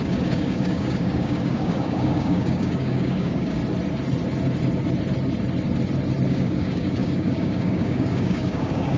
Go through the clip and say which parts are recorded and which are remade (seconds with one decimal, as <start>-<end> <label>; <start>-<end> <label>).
0.0-3.6 remade; 3.6-6.3 recorded; 6.3-9.0 remade